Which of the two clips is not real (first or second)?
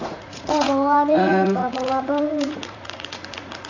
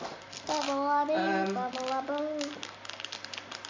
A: first